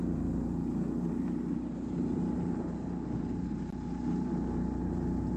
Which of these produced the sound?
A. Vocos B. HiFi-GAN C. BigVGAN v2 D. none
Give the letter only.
D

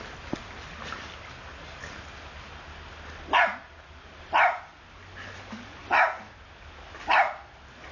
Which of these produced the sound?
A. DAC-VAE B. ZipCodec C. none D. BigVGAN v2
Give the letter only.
C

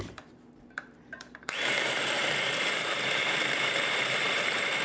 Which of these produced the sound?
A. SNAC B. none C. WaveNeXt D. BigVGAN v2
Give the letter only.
D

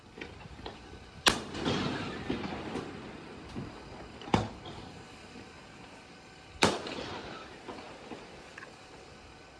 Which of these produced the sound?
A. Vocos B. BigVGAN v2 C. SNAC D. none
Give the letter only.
B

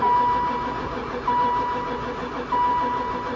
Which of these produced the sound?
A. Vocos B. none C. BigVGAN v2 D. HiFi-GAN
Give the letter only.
B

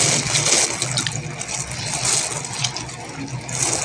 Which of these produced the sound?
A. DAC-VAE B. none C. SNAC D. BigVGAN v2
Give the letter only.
B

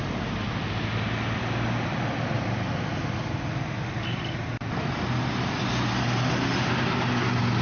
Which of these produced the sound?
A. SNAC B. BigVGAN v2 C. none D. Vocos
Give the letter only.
C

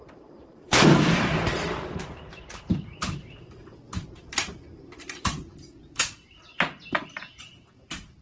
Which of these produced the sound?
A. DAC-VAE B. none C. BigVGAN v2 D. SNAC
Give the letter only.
C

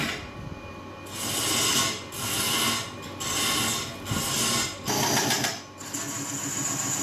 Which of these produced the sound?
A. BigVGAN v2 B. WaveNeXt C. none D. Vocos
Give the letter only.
C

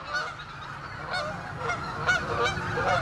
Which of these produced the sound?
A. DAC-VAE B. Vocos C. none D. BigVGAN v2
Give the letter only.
C